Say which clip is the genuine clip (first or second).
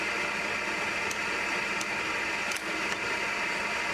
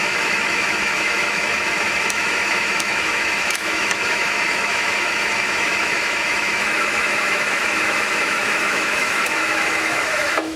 first